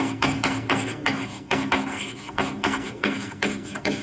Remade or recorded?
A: remade